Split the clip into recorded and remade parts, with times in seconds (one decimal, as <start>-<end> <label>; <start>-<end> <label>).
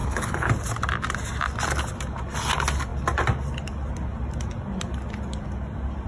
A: 0.0-0.5 remade; 0.5-6.1 recorded